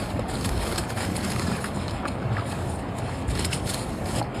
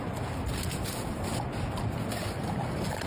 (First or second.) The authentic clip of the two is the second